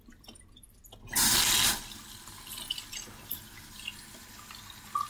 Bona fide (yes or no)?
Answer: yes